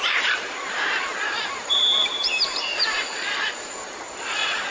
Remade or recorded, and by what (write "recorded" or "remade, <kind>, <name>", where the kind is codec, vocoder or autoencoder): remade, vocoder, BigVGAN v2